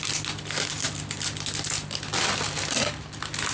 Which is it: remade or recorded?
recorded